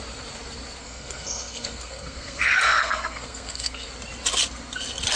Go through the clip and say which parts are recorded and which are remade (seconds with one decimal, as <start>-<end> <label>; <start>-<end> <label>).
0.0-0.8 recorded; 0.8-3.9 remade; 3.9-5.2 recorded